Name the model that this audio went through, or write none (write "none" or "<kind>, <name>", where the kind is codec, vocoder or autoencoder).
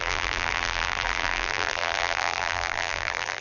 vocoder, BigVGAN v2